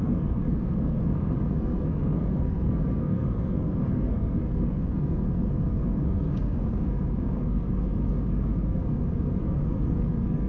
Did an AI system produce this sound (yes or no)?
yes